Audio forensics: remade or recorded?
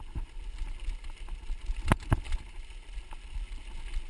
recorded